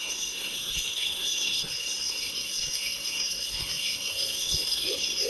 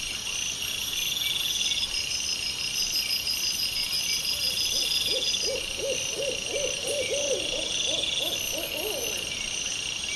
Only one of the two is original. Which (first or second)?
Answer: second